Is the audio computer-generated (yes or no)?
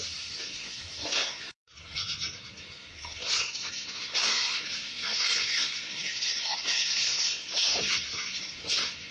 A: yes